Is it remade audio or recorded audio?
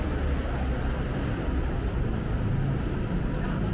recorded